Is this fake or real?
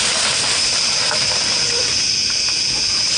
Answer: real